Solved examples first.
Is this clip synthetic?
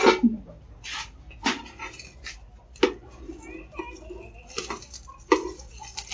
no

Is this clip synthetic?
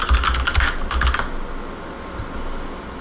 no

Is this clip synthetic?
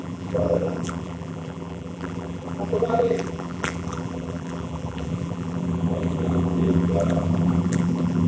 yes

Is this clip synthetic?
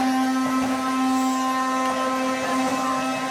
no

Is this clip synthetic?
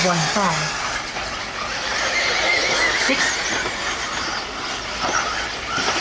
no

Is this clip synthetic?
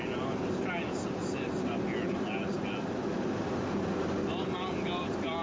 no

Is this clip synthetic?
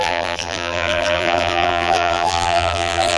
yes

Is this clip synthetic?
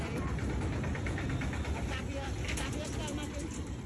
yes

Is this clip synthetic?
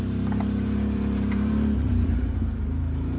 yes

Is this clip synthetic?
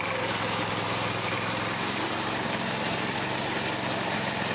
yes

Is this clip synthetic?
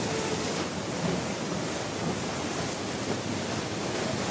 no